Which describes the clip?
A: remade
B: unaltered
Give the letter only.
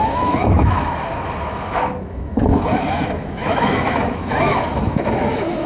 A